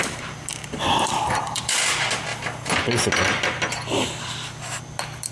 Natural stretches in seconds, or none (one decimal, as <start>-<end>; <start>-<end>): 0.0-0.6; 1.7-2.3; 3.1-5.3